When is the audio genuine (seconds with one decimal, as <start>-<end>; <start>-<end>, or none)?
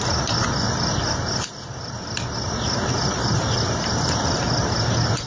0.0-5.3